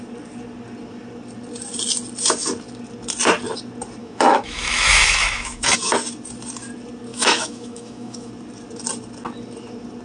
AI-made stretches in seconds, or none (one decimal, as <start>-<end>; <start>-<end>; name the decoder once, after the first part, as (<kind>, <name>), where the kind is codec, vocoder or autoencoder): 4.0-5.9 (autoencoder, DAC-VAE); 7.1-8.3